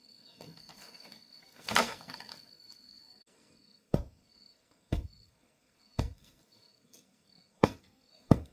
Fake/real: fake